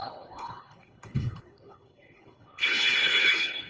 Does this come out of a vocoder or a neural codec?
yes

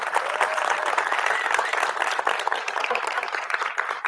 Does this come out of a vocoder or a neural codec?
yes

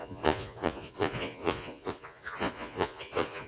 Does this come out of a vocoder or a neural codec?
yes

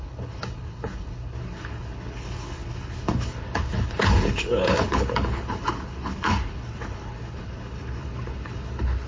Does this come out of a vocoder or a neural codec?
yes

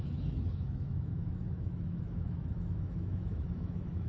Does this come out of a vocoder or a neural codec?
yes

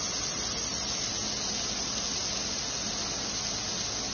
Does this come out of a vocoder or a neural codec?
no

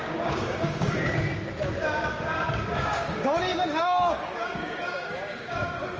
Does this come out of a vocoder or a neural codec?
yes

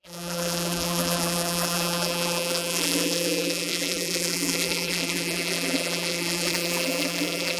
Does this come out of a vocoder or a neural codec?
yes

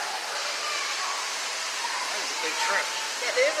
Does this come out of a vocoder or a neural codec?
no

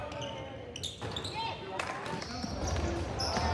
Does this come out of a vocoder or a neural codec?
no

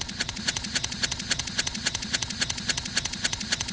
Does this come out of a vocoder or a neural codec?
yes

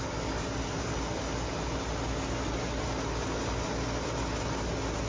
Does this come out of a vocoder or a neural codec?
no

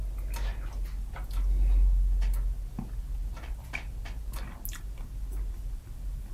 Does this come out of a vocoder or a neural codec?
no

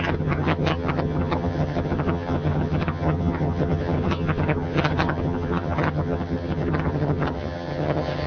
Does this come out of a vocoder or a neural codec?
yes